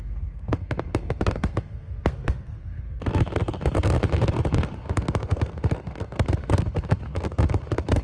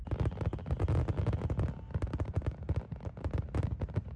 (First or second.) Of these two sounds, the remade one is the first